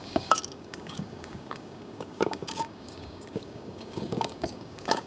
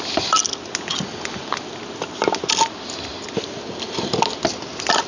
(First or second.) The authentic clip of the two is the second